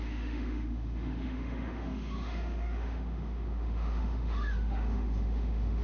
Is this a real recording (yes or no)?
no